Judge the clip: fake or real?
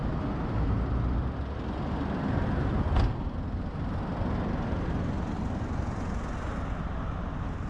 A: real